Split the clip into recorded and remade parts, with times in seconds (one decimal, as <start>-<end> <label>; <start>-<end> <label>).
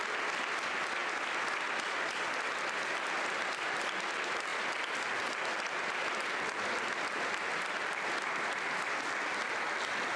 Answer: 0.0-10.2 recorded